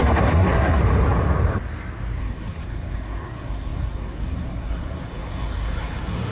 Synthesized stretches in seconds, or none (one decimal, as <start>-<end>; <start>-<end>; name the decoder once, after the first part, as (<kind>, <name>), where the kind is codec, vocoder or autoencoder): 0.0-0.8 (codec, SNAC); 2.2-6.3